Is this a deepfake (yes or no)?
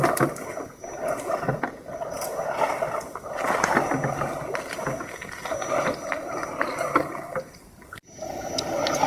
no